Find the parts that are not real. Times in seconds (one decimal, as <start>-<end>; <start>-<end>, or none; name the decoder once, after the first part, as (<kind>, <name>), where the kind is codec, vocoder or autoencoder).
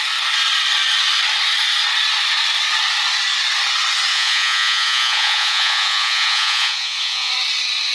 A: 4.1-7.3 (vocoder, Vocos)